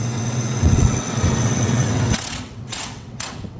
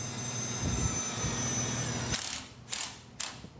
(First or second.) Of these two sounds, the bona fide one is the second